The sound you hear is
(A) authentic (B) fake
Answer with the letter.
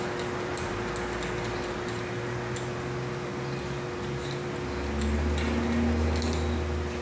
A